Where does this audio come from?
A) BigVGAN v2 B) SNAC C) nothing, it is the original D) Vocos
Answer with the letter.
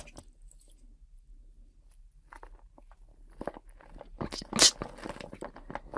C